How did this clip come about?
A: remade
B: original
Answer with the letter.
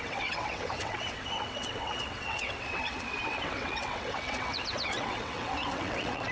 A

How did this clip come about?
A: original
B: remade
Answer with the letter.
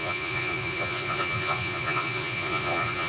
B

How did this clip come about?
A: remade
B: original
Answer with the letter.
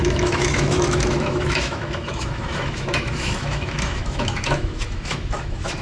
A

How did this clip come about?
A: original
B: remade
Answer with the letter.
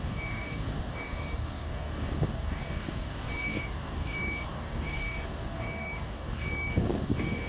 B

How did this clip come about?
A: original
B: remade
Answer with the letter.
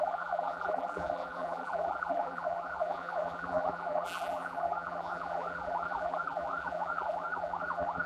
B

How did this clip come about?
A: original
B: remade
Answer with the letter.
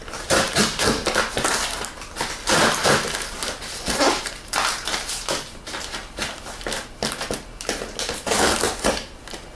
A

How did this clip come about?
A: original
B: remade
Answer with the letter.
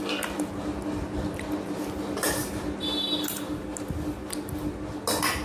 A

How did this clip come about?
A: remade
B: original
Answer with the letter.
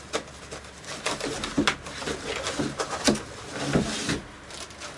B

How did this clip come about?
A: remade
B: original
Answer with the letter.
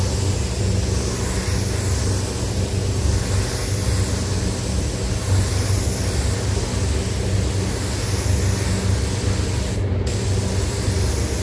B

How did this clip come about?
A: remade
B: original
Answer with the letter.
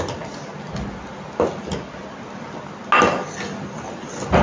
B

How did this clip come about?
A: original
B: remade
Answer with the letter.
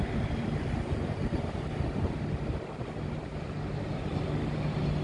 A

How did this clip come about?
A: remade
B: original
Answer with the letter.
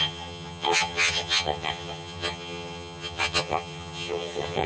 A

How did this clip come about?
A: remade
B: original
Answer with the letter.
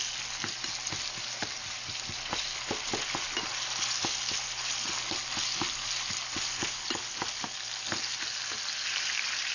B